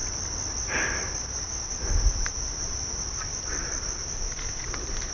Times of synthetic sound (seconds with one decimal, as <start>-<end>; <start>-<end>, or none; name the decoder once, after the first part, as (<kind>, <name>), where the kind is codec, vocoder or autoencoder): none